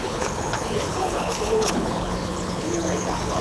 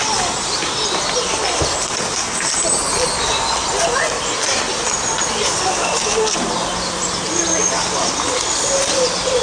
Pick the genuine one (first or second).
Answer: second